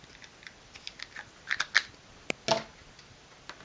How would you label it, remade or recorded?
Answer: recorded